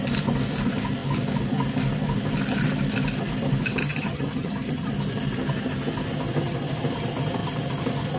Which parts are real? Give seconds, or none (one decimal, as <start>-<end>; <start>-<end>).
0.0-3.8; 4.9-8.2